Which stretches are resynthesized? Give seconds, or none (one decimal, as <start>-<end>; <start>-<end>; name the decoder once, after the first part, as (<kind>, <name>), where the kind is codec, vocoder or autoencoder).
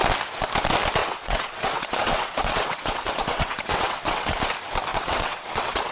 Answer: 1.0-4.5 (vocoder, WaveNeXt); 4.9-5.9